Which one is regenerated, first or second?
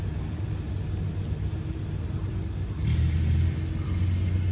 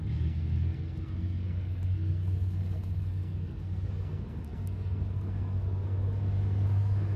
second